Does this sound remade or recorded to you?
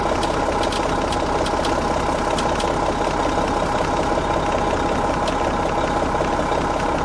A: recorded